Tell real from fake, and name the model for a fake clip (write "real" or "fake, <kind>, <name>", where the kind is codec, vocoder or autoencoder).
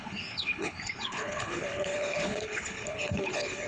fake, codec, HILCodec